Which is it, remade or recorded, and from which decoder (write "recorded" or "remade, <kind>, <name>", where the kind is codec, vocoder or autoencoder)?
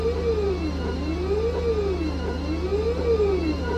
recorded